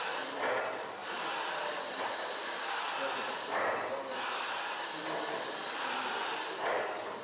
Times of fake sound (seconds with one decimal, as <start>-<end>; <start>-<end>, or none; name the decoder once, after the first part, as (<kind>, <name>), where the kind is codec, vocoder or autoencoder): none